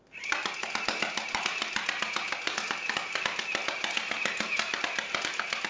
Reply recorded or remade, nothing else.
recorded